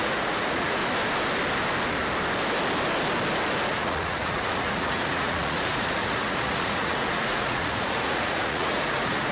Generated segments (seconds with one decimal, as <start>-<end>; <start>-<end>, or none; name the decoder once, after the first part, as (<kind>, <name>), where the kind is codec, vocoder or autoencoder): 0.0-0.8 (vocoder, Vocos); 3.7-9.3